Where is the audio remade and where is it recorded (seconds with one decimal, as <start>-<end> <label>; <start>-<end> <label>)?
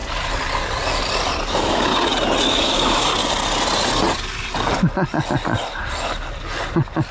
0.0-1.5 recorded; 1.5-1.9 remade; 1.9-2.5 recorded; 2.5-3.1 remade; 3.1-7.1 recorded